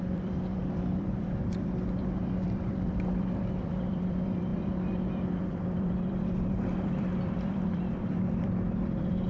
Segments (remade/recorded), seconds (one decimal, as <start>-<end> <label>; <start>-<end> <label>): 0.0-9.3 remade